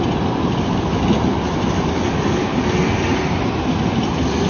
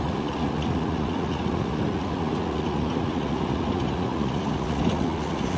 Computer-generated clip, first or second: second